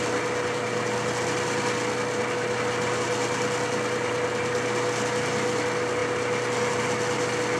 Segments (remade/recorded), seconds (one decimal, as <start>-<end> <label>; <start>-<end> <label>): 0.0-7.6 recorded